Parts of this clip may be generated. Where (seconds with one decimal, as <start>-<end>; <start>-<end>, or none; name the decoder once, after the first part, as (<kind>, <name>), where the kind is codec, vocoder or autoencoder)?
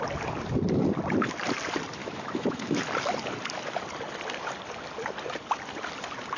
2.0-2.8 (autoencoder, DAC-VAE)